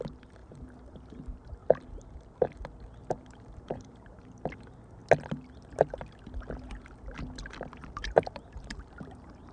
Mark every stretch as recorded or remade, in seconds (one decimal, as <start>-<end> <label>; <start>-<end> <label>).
0.0-1.6 remade; 1.6-3.1 recorded; 3.1-5.0 remade; 5.0-7.7 recorded; 7.7-9.5 remade